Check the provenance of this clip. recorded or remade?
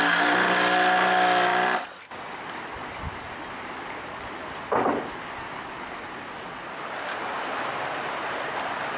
recorded